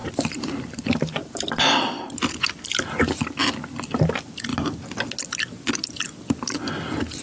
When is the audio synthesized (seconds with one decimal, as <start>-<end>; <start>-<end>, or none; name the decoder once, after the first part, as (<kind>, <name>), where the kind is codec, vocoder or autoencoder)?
0.0-1.5 (vocoder, BigVGAN v2)